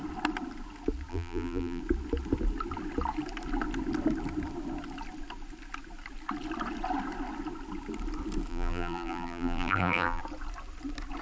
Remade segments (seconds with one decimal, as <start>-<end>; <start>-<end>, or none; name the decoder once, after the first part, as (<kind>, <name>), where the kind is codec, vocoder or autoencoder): 1.1-1.8 (vocoder, BigVGAN v2); 8.5-10.2